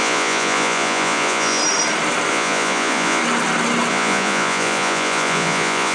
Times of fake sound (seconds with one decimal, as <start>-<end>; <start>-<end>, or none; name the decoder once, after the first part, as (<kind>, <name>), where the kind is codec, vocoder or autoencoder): 0.0-1.6 (vocoder, Vocos); 2.3-3.2; 3.9-5.9